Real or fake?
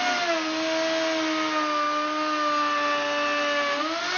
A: real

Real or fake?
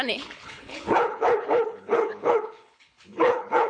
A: fake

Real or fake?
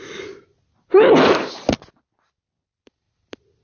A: real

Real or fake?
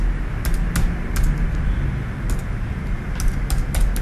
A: real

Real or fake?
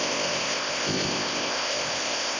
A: fake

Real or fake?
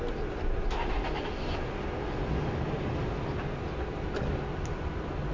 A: real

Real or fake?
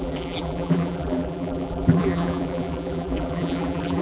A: fake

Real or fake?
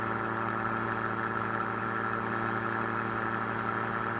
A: real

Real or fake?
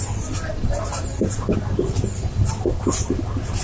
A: real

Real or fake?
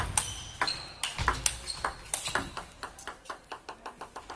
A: real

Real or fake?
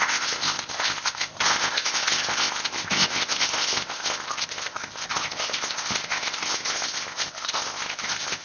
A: fake